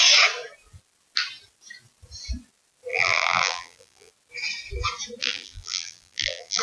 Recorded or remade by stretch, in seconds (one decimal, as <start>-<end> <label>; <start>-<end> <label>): 0.0-2.9 recorded; 2.9-4.1 remade; 4.1-5.2 recorded; 5.2-6.6 remade